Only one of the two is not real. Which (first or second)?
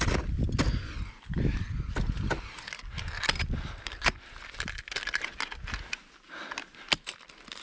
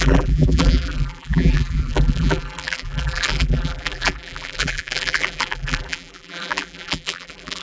second